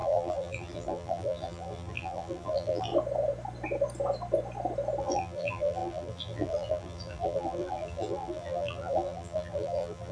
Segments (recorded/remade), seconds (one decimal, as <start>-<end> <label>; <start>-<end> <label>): 0.0-2.9 remade; 2.9-5.0 recorded; 5.0-10.1 remade